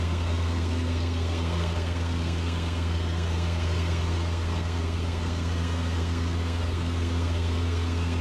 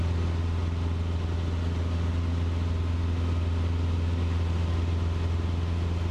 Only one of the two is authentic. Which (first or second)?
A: second